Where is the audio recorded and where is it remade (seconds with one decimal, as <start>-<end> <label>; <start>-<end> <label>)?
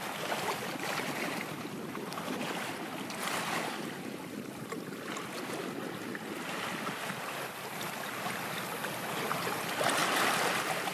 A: 0.0-10.9 recorded